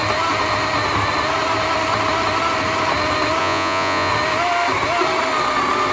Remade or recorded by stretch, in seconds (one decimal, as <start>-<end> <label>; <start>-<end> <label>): 0.0-3.4 recorded; 3.4-4.1 remade; 4.1-5.9 recorded